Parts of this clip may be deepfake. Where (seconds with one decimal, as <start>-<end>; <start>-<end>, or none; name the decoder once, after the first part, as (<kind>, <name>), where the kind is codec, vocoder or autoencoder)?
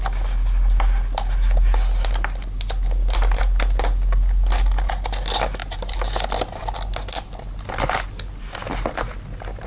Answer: none